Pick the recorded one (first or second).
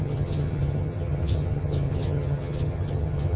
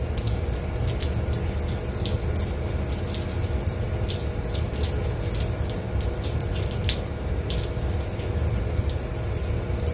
second